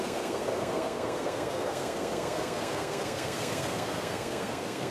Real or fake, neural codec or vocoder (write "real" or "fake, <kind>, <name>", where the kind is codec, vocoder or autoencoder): fake, codec, SNAC